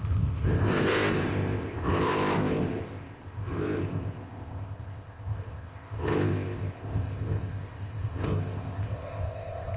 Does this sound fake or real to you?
fake